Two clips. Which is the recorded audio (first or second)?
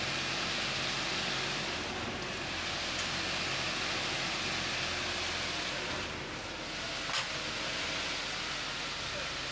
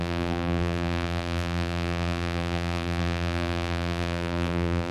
first